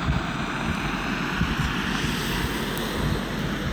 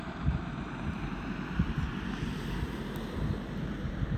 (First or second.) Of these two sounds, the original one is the first